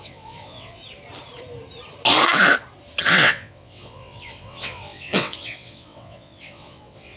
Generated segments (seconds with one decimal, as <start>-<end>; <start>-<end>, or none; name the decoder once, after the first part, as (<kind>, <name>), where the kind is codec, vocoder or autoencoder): 0.0-0.8 (vocoder, WaveNeXt); 3.1-7.2